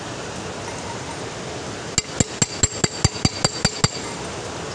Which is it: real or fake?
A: real